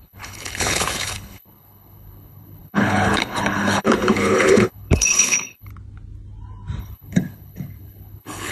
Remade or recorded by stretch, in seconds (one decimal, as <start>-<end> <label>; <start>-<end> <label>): 0.0-5.7 remade; 5.7-6.8 recorded; 6.8-8.5 remade